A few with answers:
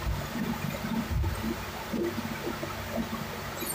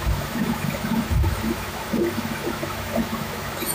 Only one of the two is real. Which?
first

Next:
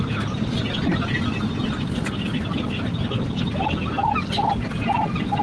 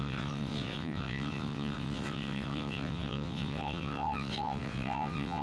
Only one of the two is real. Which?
first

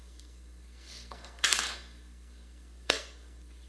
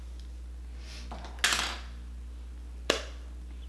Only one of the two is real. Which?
second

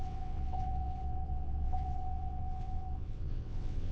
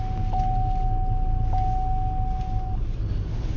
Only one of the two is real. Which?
second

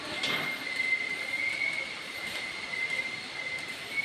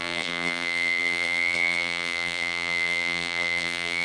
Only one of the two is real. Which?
first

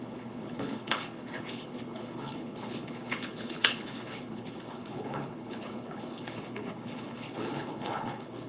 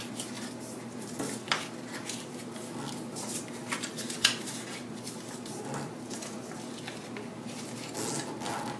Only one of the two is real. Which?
second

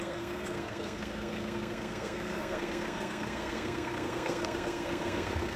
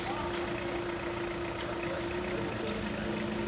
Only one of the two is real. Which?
second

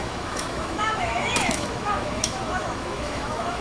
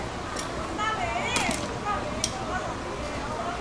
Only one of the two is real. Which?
second